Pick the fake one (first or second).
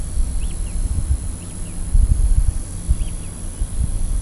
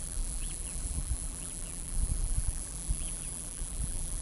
second